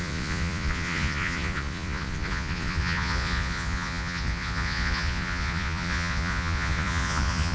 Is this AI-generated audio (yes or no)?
yes